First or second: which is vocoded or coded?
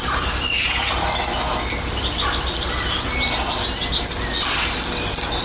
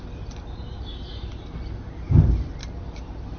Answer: second